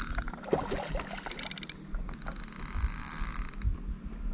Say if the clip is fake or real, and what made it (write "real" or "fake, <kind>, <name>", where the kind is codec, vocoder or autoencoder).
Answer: real